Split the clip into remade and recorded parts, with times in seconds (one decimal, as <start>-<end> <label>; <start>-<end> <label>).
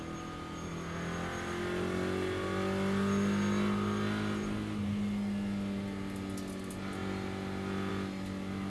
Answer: 0.0-8.7 recorded